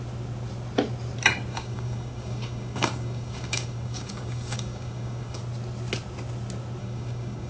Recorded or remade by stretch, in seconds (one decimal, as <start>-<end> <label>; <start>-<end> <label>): 0.0-1.5 recorded; 1.5-5.4 remade; 5.4-6.8 recorded; 6.8-7.5 remade